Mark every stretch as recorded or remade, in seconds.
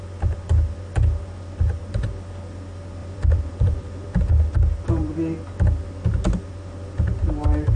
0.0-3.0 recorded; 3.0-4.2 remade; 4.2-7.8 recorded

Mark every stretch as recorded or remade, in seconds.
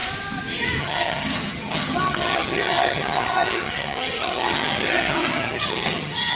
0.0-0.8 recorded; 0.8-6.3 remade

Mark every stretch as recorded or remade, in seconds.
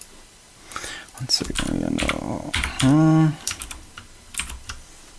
0.0-1.0 recorded; 1.0-3.9 remade; 3.9-5.2 recorded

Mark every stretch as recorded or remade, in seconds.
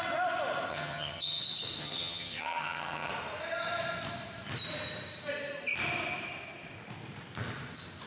0.0-0.7 recorded; 0.7-1.4 remade; 1.4-1.8 recorded; 1.8-3.1 remade; 3.1-8.1 recorded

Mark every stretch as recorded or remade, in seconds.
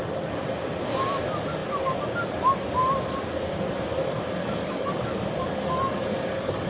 0.0-4.4 recorded; 4.4-6.7 remade